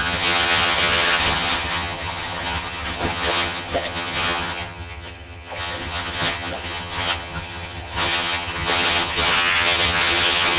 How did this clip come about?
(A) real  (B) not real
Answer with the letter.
B